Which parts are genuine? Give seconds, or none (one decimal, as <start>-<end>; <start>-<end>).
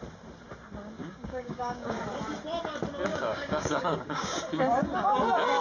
0.0-1.0; 2.0-3.1; 4.4-5.6